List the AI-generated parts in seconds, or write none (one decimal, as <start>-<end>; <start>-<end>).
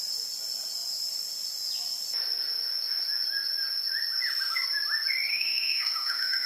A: 5.3-6.5